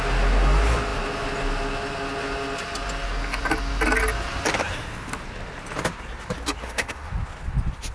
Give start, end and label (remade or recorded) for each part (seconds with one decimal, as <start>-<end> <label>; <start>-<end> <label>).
0.0-6.6 recorded; 6.6-7.1 remade; 7.1-7.9 recorded